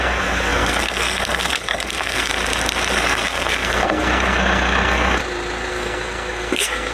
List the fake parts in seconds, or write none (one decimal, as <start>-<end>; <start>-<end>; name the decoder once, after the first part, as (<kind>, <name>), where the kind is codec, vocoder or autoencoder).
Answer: 0.0-2.3 (codec, SNAC); 2.9-5.2; 5.7-6.9